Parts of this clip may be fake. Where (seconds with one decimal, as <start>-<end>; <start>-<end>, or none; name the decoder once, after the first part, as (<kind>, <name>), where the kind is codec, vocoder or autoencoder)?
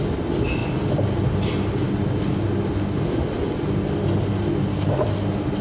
none